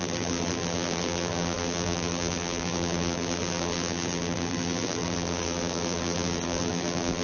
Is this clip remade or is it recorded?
remade